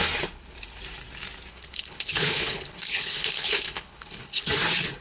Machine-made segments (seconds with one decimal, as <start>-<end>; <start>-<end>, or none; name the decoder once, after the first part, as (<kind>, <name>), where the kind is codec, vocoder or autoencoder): 1.5-4.5 (codec, HILCodec)